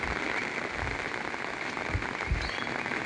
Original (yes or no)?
yes